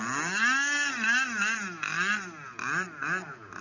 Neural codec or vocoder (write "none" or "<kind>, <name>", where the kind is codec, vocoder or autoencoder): none